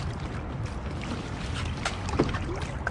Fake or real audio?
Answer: real